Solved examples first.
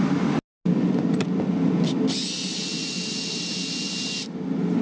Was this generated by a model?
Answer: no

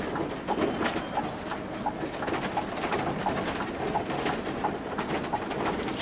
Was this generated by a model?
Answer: no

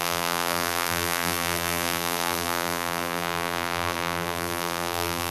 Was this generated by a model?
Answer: yes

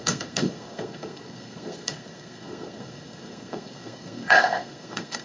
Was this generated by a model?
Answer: yes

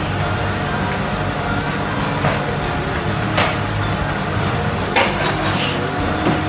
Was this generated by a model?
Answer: no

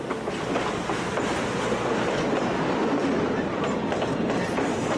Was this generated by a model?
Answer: yes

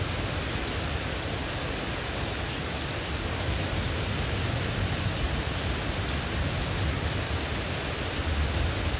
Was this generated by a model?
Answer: no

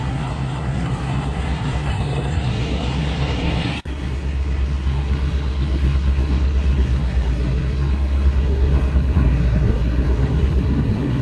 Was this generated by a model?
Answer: yes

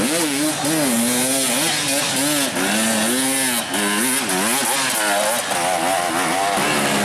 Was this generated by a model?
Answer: no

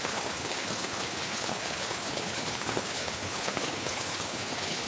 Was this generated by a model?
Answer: yes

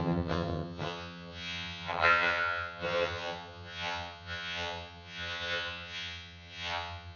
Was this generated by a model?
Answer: yes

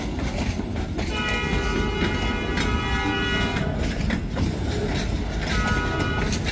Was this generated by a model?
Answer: no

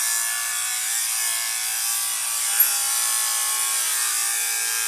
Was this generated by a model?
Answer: no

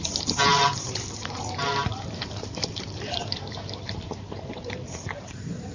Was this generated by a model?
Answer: yes